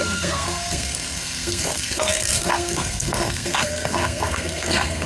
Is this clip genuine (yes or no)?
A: no